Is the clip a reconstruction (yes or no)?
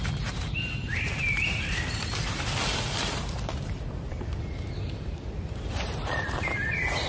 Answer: yes